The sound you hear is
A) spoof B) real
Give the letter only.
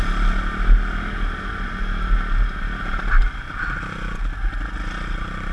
B